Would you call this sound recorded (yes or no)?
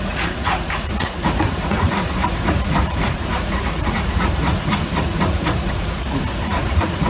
no